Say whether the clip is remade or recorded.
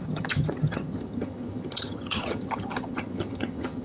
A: remade